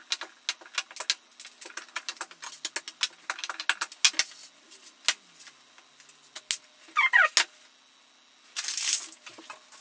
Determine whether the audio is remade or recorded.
recorded